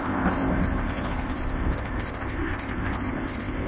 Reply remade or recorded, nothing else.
remade